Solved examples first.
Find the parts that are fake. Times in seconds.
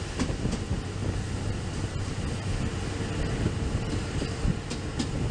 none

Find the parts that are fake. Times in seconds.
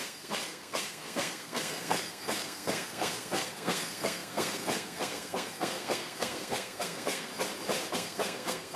0.0-7.3 (codec, SNAC); 7.9-8.8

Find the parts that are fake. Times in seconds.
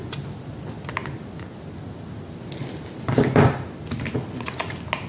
none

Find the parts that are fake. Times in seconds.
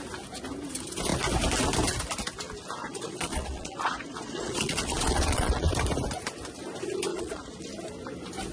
2.8-5.7 (vocoder, Vocos); 7.1-7.6